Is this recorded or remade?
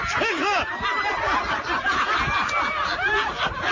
recorded